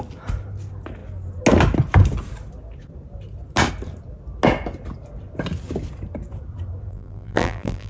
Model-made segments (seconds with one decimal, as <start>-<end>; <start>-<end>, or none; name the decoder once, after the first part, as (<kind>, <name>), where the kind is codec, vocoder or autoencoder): 6.9-7.9 (vocoder, BigVGAN v2)